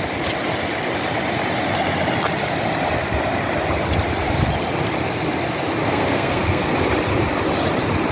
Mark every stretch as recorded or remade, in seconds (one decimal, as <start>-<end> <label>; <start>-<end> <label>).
0.0-5.8 recorded; 5.8-6.7 remade; 6.7-8.1 recorded